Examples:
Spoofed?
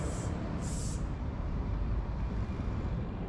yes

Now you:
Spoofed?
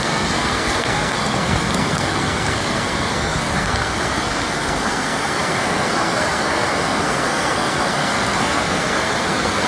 yes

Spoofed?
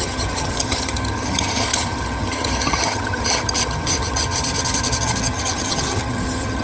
yes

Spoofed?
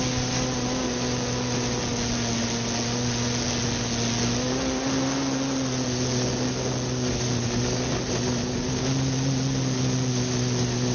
no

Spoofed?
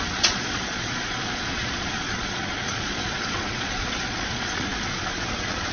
yes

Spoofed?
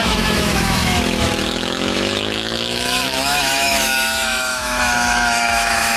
yes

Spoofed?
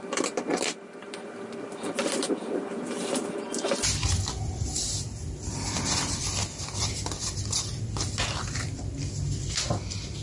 yes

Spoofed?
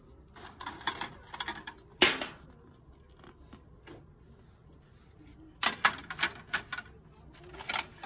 no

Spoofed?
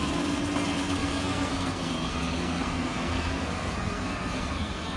yes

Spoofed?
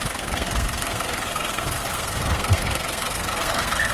yes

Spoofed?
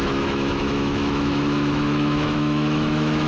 yes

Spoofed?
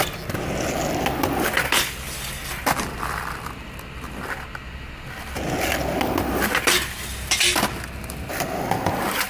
no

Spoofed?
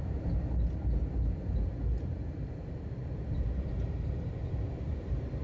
no